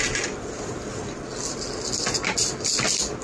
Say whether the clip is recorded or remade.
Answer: recorded